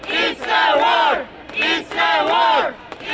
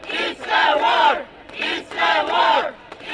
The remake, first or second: second